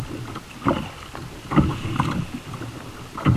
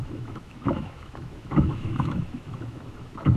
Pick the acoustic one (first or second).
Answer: first